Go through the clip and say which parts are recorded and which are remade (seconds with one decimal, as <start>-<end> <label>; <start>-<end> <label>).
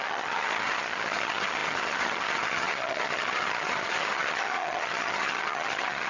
0.0-6.1 remade